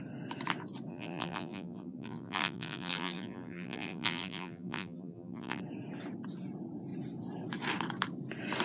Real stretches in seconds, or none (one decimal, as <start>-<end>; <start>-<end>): 0.0-0.9; 5.6-8.6